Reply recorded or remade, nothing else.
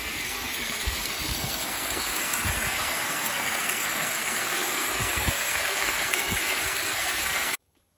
remade